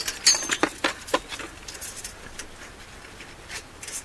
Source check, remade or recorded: recorded